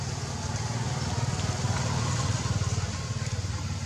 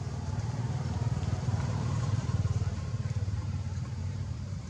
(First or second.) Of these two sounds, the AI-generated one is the second